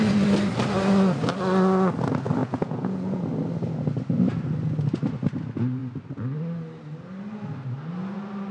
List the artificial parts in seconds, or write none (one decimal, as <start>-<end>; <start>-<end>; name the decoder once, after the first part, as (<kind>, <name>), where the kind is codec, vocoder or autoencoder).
2.4-3.2 (vocoder, Vocos)